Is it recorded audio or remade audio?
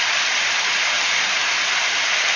remade